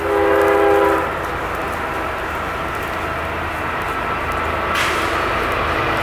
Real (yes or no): yes